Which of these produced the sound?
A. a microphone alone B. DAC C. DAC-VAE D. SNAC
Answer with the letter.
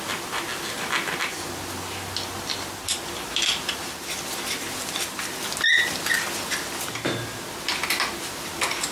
A